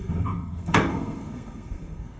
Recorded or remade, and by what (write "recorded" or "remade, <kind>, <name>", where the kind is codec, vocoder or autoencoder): remade, codec, SNAC